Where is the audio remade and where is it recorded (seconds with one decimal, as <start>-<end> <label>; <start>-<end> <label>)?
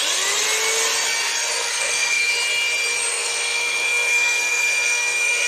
0.0-1.7 recorded; 1.7-2.3 remade; 2.3-3.1 recorded; 3.1-5.5 remade